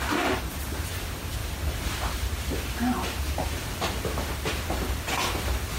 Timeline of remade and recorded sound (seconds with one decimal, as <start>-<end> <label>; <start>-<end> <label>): 0.0-5.8 recorded